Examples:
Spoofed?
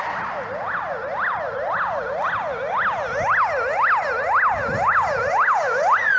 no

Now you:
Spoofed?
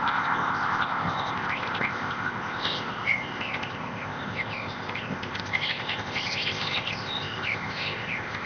yes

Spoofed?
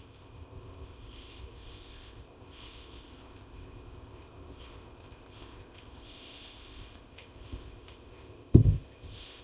yes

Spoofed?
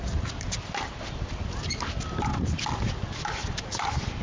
no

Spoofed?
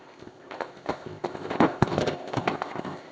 yes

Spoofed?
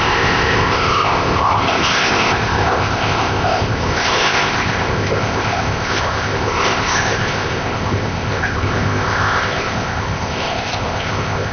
yes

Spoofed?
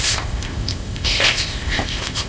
yes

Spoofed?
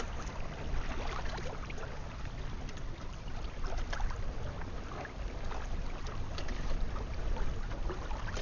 no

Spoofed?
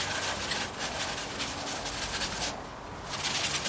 no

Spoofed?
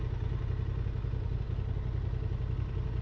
no